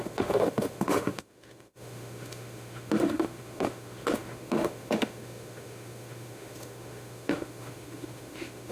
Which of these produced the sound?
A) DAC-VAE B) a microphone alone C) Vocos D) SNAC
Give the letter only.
A